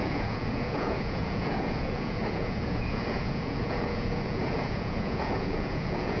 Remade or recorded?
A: remade